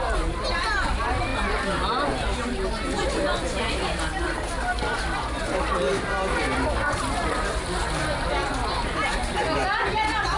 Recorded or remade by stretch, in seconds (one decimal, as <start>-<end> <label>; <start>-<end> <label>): 0.0-10.4 recorded